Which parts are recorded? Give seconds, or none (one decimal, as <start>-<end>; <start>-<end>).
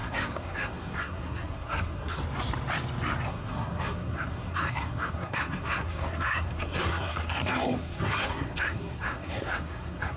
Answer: 2.2-3.3